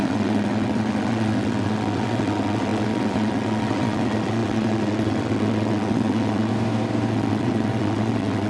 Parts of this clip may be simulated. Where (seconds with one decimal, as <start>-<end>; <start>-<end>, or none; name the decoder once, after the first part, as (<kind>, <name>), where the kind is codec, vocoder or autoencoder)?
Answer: 0.0-6.5 (vocoder, WaveNeXt); 7.1-8.5